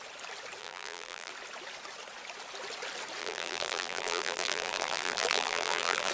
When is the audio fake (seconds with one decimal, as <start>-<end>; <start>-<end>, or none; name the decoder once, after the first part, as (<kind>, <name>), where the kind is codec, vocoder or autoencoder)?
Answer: 0.6-1.3 (vocoder, BigVGAN v2); 3.2-6.1